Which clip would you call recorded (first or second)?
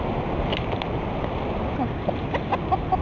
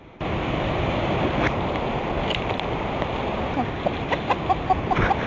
first